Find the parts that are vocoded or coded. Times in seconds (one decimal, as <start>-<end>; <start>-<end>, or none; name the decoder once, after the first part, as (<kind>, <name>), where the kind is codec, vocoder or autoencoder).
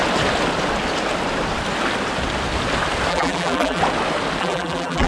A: 3.1-3.8 (vocoder, BigVGAN v2); 4.4-5.1